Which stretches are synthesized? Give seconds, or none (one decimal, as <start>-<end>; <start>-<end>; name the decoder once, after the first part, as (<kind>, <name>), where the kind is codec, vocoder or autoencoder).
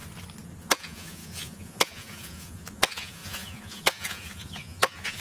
0.6-5.2 (vocoder, Vocos)